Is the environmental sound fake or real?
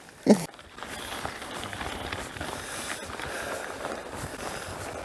real